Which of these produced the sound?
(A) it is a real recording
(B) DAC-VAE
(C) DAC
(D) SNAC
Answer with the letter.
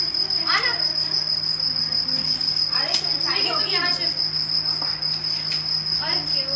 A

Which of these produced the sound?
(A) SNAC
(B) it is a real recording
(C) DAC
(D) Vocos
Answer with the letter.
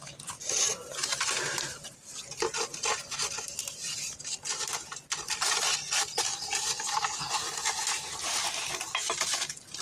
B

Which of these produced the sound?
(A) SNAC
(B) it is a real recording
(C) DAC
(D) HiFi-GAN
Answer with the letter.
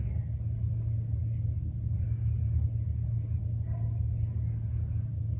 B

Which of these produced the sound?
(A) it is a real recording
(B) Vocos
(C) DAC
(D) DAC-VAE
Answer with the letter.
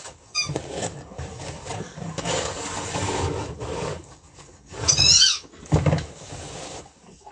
C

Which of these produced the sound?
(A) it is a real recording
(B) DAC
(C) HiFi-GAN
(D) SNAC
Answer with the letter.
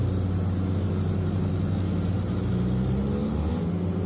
A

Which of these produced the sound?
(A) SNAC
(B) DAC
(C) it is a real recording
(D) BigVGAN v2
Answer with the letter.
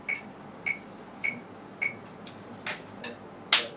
C